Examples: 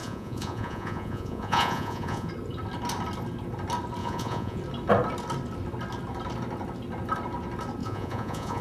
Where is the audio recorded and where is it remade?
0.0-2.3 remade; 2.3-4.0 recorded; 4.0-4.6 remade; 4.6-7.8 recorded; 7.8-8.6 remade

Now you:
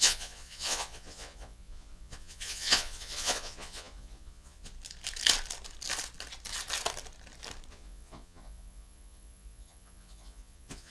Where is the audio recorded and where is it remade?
0.0-4.7 remade; 4.7-7.7 recorded; 7.7-10.9 remade

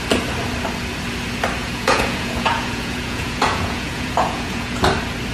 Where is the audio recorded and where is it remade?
0.0-1.6 recorded; 1.6-4.8 remade; 4.8-5.3 recorded

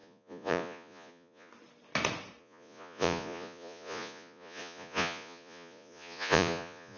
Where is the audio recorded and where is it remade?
0.0-1.5 remade; 1.5-2.4 recorded; 2.4-7.0 remade

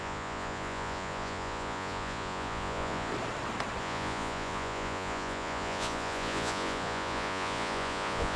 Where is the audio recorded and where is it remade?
0.0-3.1 remade; 3.1-3.8 recorded; 3.8-8.4 remade

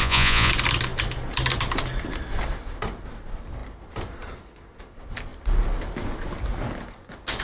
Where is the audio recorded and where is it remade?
0.0-0.5 remade; 0.5-7.4 recorded